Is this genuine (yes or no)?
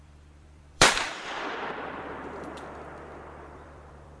no